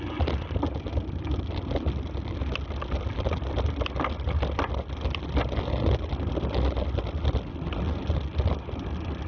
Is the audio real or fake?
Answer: real